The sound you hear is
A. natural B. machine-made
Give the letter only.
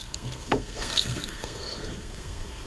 B